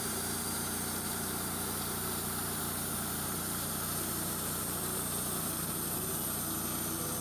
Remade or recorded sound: remade